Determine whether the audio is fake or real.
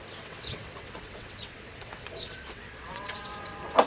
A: fake